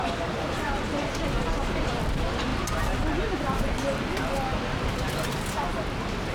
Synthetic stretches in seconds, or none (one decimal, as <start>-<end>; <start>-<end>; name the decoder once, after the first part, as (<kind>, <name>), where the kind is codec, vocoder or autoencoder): none